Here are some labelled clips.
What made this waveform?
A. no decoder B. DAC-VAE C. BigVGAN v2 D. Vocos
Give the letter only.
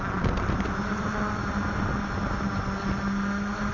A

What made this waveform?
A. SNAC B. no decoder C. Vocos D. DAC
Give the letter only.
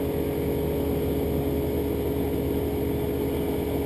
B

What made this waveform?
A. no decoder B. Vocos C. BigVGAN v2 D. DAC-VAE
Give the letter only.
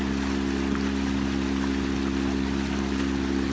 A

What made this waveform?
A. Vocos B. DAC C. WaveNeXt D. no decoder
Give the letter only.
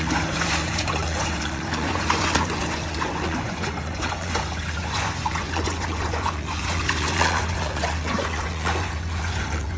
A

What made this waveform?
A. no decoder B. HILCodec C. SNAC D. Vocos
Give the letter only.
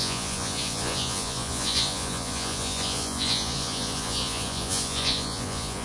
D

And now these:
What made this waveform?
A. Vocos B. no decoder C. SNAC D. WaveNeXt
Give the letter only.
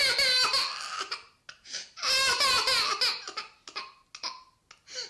B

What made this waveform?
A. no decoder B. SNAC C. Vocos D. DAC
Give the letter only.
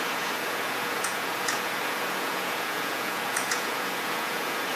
C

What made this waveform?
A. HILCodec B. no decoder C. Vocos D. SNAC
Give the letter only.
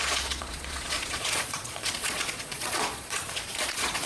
C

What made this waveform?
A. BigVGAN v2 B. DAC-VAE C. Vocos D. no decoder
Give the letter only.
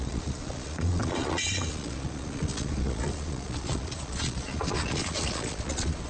C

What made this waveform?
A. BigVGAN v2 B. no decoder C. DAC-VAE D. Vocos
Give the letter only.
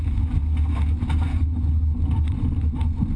B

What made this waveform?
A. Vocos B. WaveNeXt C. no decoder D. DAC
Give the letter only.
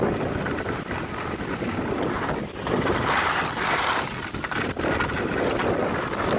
C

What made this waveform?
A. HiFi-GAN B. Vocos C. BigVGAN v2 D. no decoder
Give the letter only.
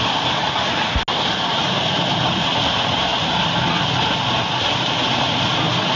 D